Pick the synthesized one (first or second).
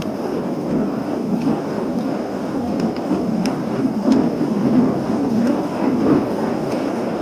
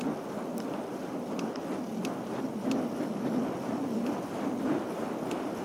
first